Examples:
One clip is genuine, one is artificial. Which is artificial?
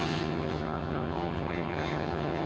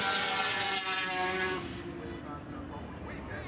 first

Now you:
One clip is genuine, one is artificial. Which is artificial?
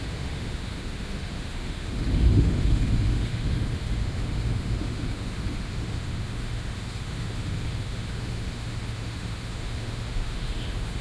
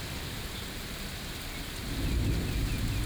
first